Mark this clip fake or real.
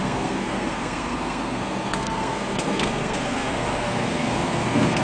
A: fake